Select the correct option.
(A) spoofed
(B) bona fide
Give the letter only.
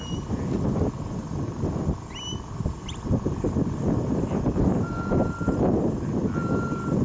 B